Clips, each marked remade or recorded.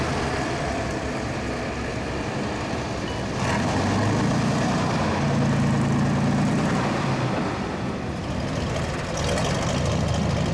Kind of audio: recorded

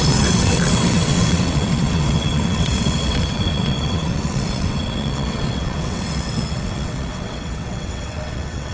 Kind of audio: remade